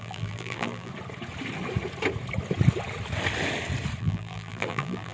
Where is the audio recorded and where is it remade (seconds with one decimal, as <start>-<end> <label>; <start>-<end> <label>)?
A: 0.0-0.9 remade; 0.9-4.0 recorded; 4.0-5.1 remade